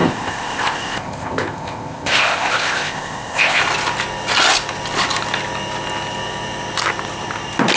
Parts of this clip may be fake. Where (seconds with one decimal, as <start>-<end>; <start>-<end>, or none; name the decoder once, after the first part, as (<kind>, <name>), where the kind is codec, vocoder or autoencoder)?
0.0-3.6 (codec, ZipCodec)